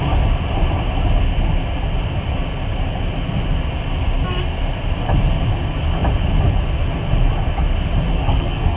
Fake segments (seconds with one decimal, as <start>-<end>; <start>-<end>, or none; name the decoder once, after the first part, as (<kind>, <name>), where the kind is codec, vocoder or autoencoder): 8.1-8.8 (codec, SNAC)